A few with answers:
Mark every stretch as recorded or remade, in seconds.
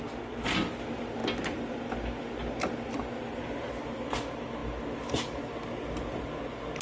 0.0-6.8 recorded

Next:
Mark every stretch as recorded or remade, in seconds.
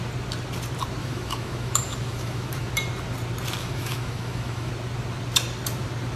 0.0-1.0 recorded; 1.0-2.7 remade; 2.7-3.6 recorded; 3.6-4.7 remade; 4.7-6.2 recorded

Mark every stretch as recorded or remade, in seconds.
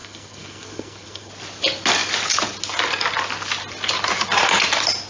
0.0-1.3 remade; 1.3-5.1 recorded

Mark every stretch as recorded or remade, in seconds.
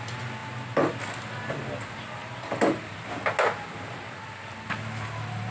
0.0-5.5 recorded